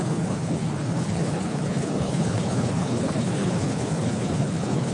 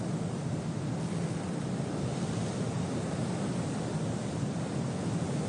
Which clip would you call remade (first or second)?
first